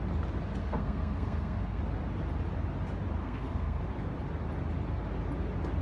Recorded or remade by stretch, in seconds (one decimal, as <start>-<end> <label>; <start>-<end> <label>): 0.0-0.6 recorded; 0.6-1.8 remade; 1.8-3.2 recorded; 3.2-3.8 remade; 3.8-5.8 recorded